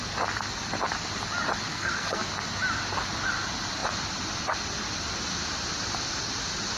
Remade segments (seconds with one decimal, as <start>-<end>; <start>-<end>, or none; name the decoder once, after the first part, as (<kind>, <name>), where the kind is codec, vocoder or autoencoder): 1.7-2.3 (codec, SNAC)